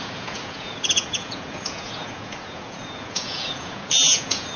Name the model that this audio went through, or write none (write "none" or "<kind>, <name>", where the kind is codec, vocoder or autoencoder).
vocoder, Vocos